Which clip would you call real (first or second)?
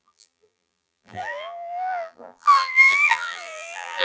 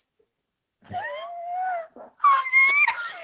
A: second